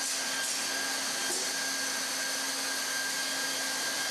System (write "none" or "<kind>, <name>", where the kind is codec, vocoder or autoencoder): none